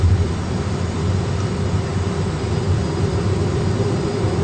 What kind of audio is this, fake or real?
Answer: real